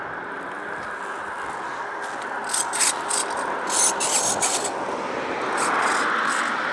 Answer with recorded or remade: recorded